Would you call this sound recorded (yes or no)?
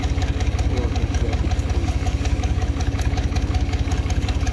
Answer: no